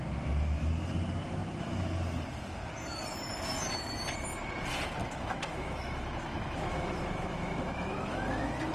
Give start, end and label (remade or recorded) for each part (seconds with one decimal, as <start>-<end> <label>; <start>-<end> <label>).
0.0-5.0 recorded; 5.0-8.7 remade